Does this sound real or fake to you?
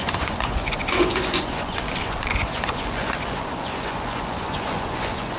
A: fake